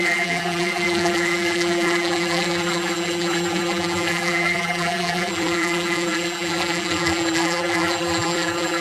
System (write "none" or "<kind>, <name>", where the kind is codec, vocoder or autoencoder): vocoder, BigVGAN v2